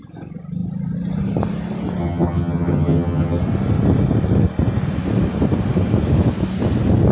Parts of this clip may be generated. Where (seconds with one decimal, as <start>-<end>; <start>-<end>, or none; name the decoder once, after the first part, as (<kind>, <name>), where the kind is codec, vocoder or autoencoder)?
2.0-3.4 (vocoder, HiFi-GAN)